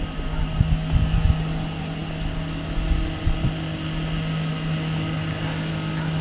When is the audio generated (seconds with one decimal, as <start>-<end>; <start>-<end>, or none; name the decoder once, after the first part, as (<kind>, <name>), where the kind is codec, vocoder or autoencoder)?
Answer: none